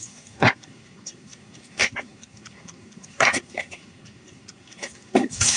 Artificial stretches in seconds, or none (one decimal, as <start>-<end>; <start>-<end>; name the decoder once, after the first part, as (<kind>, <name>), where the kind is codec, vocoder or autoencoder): 0.0-5.6 (codec, SNAC)